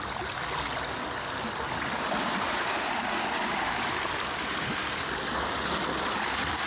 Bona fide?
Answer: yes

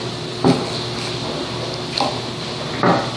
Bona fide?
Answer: yes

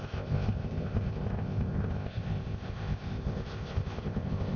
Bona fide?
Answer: no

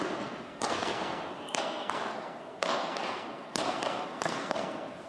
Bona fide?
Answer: no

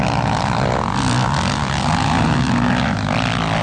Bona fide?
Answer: yes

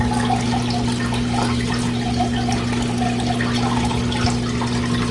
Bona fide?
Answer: yes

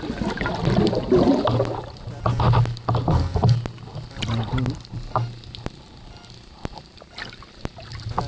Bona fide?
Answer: yes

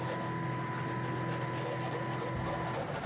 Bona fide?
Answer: yes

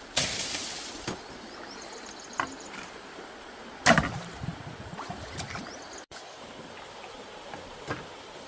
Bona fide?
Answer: yes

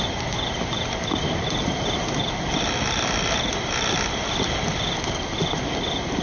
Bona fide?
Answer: yes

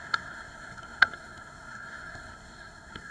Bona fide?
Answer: no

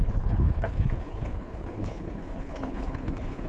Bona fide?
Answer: no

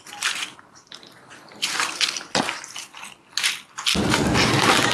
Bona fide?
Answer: yes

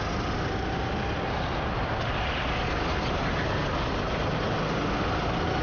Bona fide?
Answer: yes